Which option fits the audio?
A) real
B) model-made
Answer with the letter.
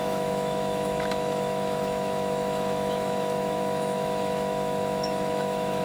B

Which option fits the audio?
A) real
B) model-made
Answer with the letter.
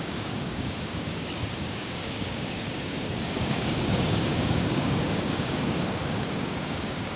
B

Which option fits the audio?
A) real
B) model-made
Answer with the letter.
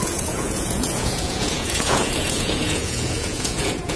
B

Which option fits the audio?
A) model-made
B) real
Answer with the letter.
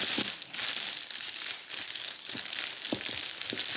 B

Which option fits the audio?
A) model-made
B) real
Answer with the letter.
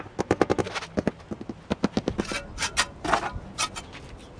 B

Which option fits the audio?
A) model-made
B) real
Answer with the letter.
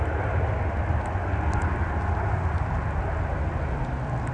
B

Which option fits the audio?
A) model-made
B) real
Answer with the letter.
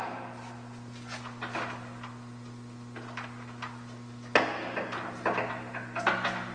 B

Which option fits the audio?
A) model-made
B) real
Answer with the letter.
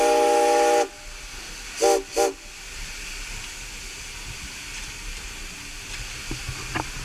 B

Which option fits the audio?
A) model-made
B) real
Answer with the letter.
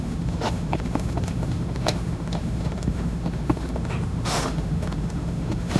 A